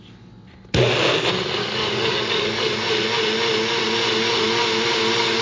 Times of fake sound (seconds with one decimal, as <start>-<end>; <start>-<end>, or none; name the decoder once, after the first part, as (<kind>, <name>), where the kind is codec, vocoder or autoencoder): 1.6-2.7 (codec, DAC)